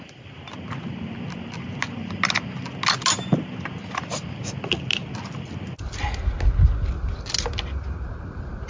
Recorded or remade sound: recorded